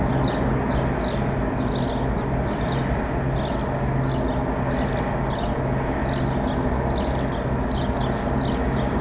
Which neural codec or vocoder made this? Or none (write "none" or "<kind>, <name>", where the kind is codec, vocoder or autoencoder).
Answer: none